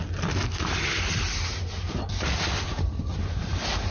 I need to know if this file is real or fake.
real